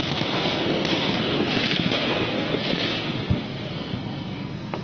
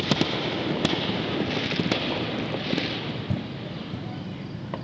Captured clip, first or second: second